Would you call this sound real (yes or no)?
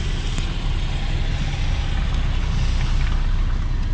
yes